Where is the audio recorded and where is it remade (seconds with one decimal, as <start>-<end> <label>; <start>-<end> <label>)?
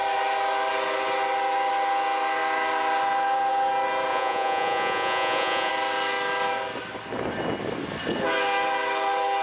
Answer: 0.0-4.1 recorded; 4.1-5.7 remade; 5.7-9.4 recorded